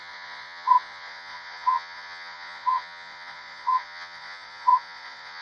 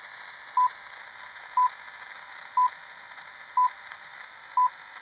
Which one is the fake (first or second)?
first